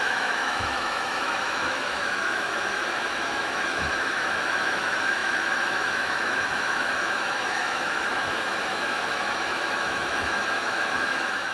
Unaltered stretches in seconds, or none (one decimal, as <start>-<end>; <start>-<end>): none